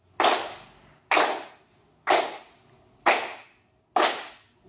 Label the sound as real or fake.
real